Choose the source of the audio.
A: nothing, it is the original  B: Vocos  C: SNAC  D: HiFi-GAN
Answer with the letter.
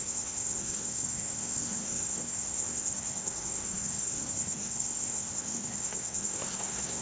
C